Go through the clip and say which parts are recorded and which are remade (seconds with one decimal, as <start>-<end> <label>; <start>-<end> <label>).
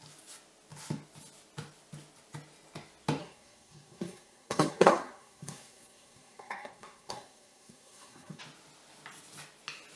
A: 0.0-3.2 recorded; 3.2-8.4 remade; 8.4-10.0 recorded